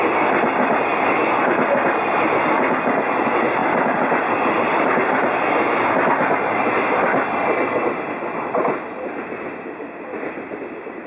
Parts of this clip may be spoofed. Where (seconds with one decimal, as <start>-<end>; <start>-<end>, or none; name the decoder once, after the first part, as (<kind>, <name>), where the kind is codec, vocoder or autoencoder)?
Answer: none